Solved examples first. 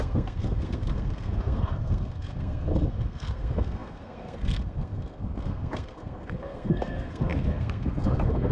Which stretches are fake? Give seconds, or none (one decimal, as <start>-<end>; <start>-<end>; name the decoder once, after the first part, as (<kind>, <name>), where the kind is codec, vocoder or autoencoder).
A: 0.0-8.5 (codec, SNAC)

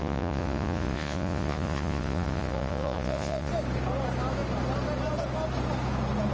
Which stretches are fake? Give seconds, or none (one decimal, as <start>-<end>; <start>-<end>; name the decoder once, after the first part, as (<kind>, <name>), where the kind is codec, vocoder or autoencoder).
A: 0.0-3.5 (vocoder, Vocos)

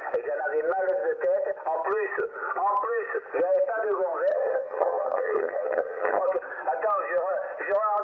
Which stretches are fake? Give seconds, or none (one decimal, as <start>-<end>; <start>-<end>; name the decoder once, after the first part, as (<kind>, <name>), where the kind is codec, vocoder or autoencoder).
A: 4.3-6.2 (vocoder, HiFi-GAN)

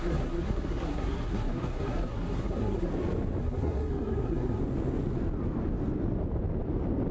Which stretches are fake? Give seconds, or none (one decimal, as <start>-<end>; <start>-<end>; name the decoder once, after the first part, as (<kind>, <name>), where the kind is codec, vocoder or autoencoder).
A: 0.0-2.9 (codec, SNAC); 3.4-4.6